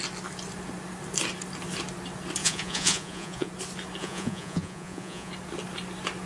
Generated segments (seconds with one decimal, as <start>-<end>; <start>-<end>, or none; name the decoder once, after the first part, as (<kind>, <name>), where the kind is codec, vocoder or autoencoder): 2.4-3.5 (vocoder, Vocos); 4.0-5.3